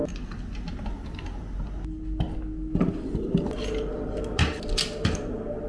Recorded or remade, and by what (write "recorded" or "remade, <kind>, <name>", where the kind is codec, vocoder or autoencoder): recorded